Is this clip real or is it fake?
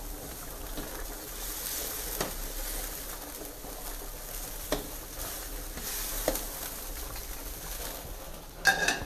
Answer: real